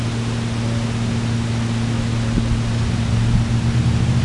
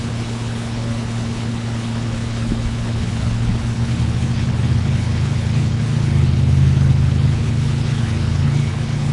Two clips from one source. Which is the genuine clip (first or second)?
first